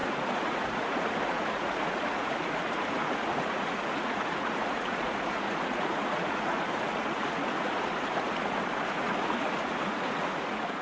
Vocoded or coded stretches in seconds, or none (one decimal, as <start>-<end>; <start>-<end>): 0.0-10.8